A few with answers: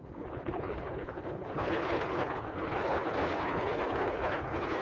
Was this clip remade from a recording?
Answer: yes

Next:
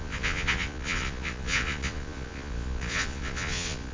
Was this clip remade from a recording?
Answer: yes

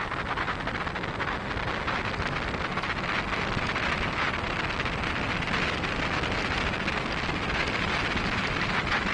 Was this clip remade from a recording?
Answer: no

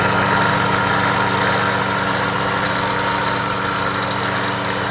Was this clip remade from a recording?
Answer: no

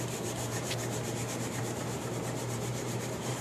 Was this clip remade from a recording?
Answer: yes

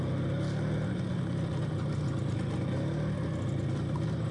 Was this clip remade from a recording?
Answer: no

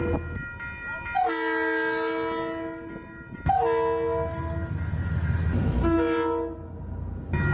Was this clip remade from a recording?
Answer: no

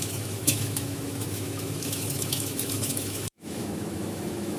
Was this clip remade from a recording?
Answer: yes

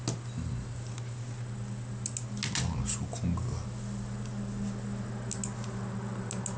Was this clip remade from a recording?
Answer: no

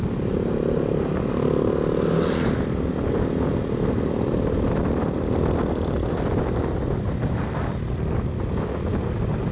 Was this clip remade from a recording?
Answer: no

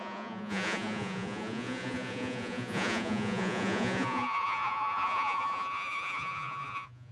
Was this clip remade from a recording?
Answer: yes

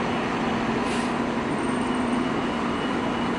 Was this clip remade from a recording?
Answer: yes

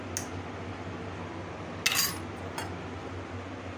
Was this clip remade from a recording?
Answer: no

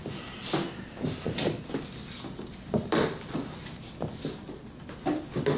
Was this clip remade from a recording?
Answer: no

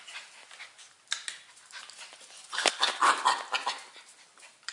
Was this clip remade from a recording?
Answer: no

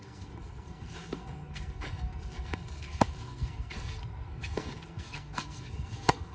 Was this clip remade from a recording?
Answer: yes